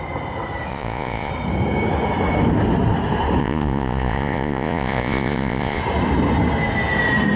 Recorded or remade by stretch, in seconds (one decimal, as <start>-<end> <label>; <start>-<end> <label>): 0.0-0.7 recorded; 0.7-1.3 remade; 1.3-3.4 recorded; 3.4-5.8 remade; 5.8-7.4 recorded